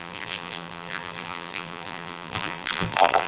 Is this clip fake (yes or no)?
yes